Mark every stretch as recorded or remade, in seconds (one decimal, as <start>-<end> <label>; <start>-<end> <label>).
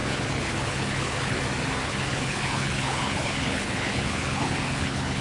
0.0-1.4 remade; 1.4-1.8 recorded; 1.8-5.2 remade